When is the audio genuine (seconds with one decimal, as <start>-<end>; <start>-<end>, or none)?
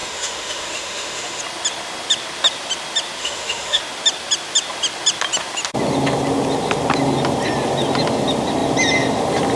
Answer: 1.4-3.2; 3.8-9.6